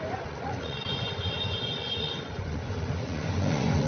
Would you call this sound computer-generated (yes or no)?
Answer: yes